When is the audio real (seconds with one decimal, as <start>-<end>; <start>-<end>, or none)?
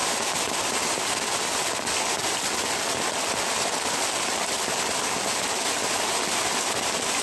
0.0-7.2